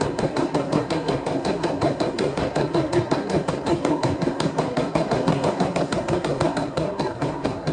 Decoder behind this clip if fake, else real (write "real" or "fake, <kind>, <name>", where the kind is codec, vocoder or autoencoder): fake, codec, SNAC